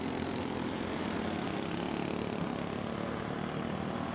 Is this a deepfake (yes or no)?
no